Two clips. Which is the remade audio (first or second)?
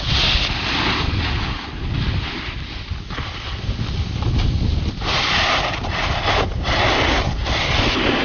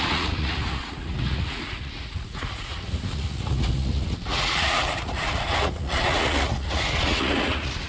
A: second